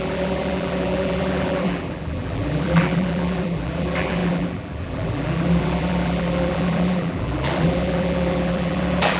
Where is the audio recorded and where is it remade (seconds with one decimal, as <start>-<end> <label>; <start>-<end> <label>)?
0.0-9.2 remade